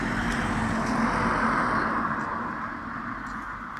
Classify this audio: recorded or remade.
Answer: recorded